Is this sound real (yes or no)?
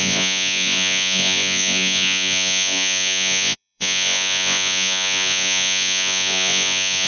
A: no